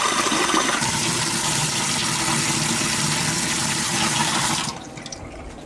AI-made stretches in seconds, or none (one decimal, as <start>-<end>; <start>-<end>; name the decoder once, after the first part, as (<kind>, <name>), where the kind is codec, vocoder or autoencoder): 0.0-2.0 (vocoder, BigVGAN v2); 2.8-5.7